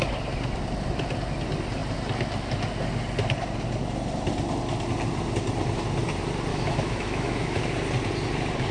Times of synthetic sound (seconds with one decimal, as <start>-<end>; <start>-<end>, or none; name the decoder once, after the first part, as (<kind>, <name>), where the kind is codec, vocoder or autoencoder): 6.5-7.6 (autoencoder, DAC-VAE)